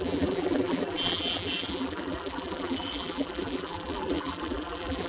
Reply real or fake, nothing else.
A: fake